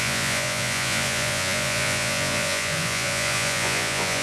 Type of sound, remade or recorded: remade